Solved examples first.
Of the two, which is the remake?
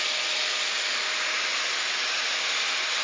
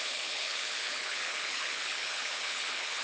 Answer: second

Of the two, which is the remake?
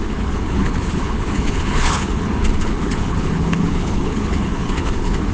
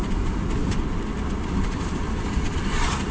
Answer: first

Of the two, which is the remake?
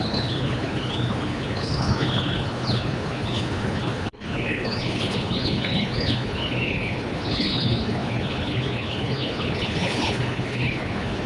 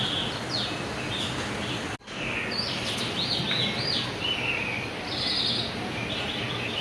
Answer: first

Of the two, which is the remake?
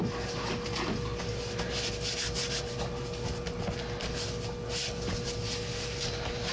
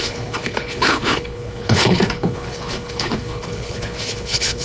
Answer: second